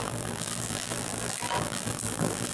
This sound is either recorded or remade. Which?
remade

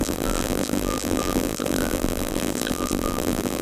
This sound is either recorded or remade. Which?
remade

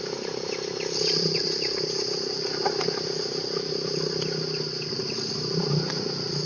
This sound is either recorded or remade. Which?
remade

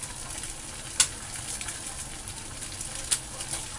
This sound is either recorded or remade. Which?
recorded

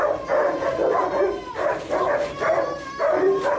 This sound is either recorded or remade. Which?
recorded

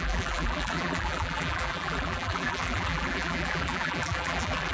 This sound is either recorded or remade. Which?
remade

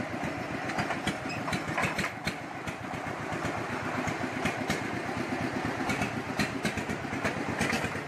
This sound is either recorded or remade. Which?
recorded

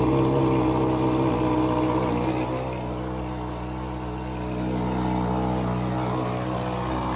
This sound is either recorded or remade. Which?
recorded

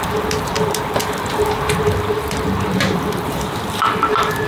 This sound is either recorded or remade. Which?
remade